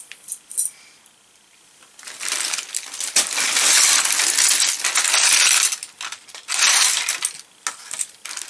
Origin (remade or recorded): recorded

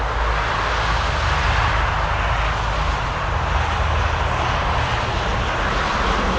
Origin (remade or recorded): recorded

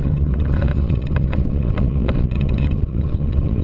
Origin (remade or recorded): remade